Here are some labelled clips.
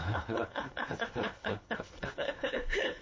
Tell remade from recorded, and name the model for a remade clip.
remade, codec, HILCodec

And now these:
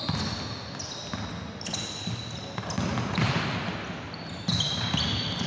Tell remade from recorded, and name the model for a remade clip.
recorded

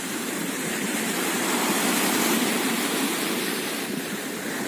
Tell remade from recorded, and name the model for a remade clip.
remade, vocoder, BigVGAN v2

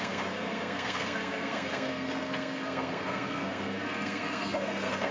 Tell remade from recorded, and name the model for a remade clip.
remade, codec, SNAC